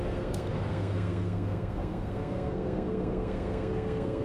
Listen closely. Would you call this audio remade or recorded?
remade